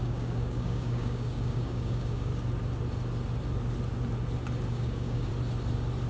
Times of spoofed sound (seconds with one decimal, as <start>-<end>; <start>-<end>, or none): 0.0-2.3; 4.7-5.3